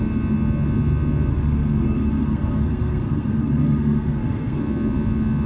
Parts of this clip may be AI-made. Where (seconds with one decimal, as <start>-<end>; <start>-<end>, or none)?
1.3-4.6